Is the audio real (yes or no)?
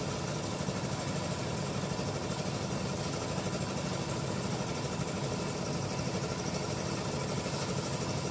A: yes